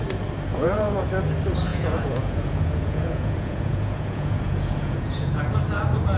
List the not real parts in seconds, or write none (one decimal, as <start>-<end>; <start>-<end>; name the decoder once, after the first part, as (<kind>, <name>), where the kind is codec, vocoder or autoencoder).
0.5-1.1 (vocoder, Vocos); 1.7-5.4